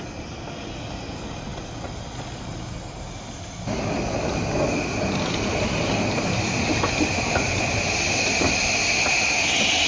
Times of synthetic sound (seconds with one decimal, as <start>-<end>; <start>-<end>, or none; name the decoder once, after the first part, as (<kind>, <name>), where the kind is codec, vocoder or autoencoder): none